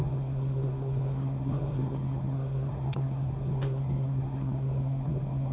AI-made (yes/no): yes